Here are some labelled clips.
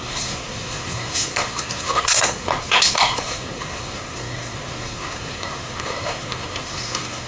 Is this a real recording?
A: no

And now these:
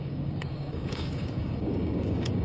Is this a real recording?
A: no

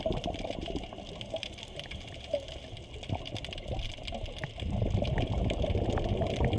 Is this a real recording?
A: yes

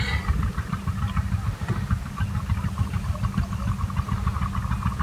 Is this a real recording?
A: yes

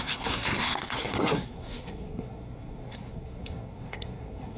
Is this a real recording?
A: no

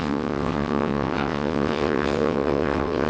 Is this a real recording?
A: no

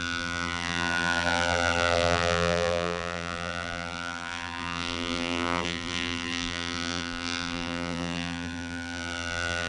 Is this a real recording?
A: no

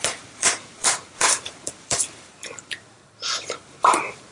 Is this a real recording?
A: no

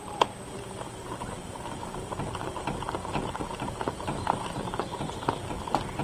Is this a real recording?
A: no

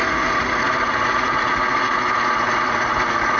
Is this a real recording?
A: no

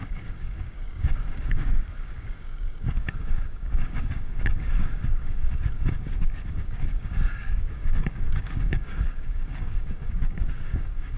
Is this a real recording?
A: no